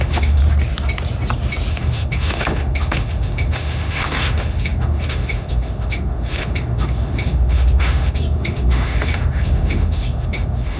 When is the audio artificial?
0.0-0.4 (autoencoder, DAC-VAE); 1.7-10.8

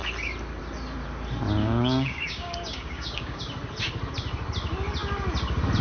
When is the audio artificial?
1.6-3.4 (codec, DAC)

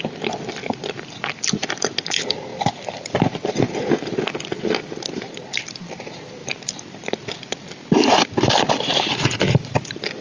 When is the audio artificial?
0.0-10.2 (vocoder, BigVGAN v2)

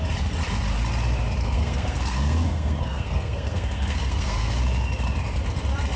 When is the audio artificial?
1.4-4.6 (codec, SNAC)

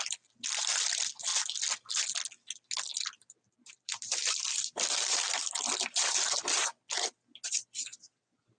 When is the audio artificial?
2.9-6.7 (vocoder, BigVGAN v2)

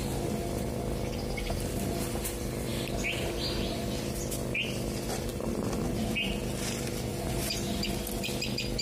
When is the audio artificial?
none

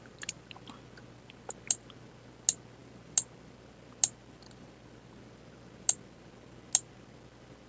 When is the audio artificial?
none

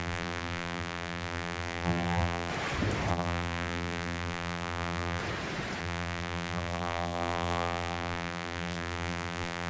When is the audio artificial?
0.0-2.5 (vocoder, BigVGAN v2); 3.1-5.2; 5.8-9.7